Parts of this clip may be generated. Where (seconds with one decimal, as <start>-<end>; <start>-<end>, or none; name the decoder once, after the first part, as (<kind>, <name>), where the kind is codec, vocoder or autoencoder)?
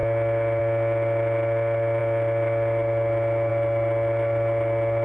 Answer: none